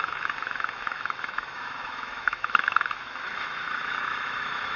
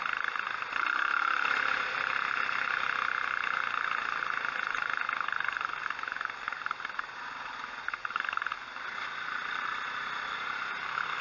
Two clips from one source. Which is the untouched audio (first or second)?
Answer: second